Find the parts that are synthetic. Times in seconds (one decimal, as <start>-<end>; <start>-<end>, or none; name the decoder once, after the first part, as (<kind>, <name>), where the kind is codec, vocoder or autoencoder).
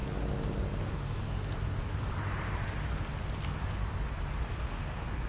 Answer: 0.9-1.4 (codec, SNAC); 4.6-5.3